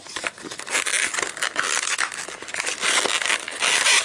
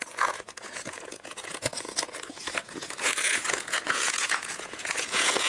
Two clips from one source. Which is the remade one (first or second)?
second